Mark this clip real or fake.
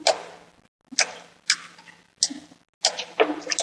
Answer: real